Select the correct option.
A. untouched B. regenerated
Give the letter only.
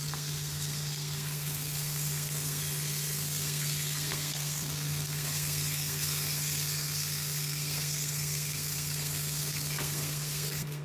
B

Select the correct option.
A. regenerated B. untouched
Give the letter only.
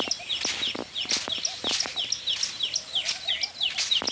B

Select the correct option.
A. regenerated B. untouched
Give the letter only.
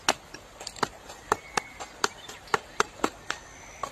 B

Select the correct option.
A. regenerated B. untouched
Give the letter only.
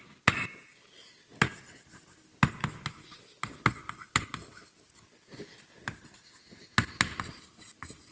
B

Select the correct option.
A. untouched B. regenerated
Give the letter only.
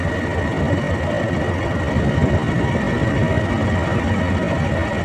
A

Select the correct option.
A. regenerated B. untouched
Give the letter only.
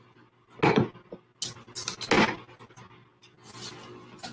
B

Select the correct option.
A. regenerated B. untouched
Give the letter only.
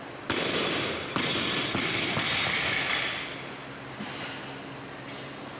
B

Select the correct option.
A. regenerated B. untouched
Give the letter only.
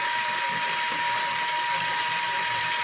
B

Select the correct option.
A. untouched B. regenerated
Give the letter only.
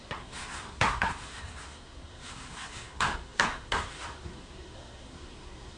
B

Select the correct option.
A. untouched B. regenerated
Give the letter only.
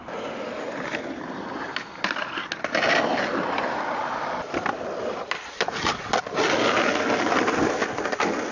A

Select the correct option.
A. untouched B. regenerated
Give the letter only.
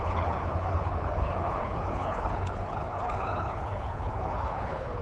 B